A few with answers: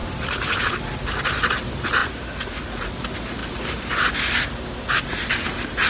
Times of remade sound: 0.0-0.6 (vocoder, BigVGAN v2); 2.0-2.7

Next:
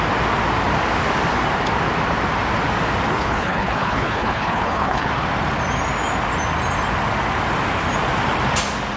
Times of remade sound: 3.1-5.1 (codec, HILCodec)

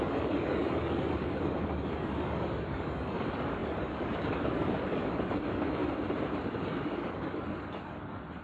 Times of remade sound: 0.0-5.8 (codec, DAC); 6.4-8.4

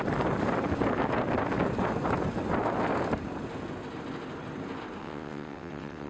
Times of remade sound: 5.0-6.1 (vocoder, WaveNeXt)

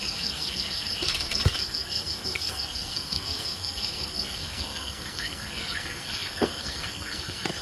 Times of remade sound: 0.0-7.6 (codec, SNAC)